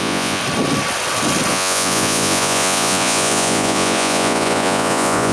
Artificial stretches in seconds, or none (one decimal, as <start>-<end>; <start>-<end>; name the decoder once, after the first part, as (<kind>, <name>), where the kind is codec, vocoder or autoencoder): 0.0-0.4 (vocoder, Vocos); 1.5-5.3